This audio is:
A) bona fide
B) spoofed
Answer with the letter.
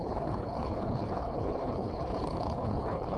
B